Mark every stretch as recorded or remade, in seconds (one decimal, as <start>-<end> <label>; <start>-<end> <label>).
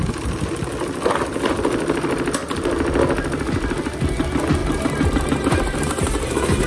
0.0-4.6 recorded; 4.6-6.7 remade